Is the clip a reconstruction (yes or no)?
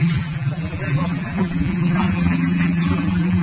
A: yes